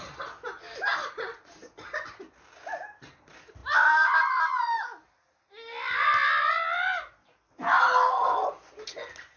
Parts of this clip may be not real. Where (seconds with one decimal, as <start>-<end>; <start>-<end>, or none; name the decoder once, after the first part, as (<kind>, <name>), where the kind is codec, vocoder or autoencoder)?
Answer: none